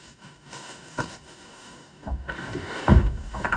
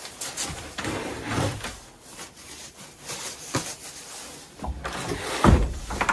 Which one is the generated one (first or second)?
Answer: first